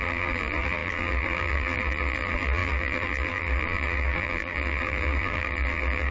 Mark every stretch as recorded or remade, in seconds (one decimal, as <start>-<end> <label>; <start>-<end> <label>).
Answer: 0.0-6.1 remade